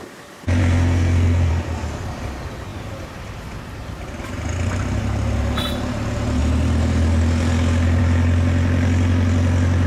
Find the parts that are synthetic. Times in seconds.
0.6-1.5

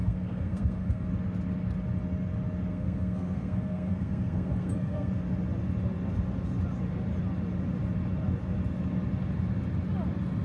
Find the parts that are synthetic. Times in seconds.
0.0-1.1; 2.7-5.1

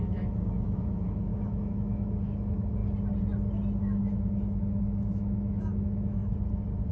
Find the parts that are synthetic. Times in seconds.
0.0-2.8; 3.8-6.2

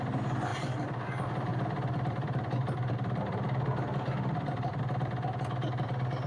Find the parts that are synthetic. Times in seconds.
0.5-1.0; 1.5-4.8